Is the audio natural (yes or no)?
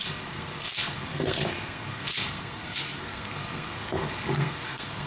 no